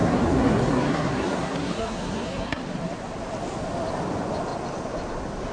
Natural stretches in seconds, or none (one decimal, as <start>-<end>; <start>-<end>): 2.6-5.5